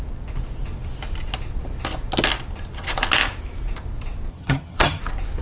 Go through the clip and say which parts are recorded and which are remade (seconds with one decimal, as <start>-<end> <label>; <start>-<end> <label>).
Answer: 0.0-4.3 recorded; 4.3-5.0 remade; 5.0-5.4 recorded